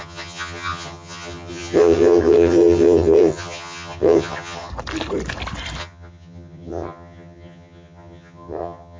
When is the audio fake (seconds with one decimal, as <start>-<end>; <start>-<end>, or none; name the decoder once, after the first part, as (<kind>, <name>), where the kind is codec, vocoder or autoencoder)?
0.0-4.7 (vocoder, HiFi-GAN); 5.8-9.0